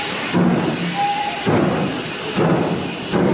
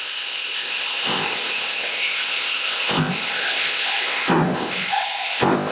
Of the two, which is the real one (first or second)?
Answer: first